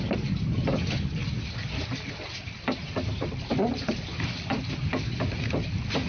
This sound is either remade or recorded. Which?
recorded